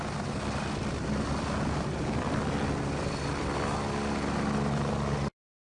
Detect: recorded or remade recorded